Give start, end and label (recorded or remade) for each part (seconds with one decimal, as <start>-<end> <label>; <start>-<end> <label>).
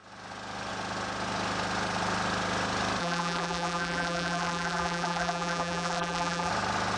0.0-3.0 recorded; 3.0-6.5 remade; 6.5-7.0 recorded